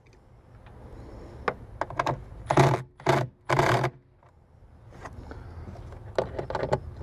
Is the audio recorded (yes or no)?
yes